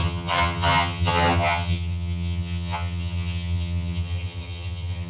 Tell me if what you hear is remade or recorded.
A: remade